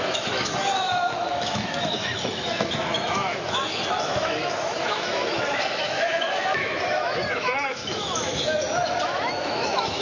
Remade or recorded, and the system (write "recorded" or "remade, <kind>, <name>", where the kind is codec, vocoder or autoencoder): remade, autoencoder, DAC-VAE